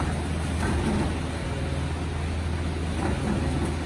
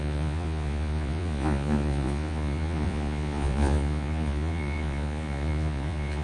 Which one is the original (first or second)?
first